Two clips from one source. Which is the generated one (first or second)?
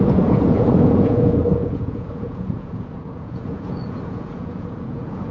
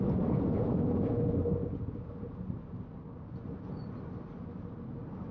first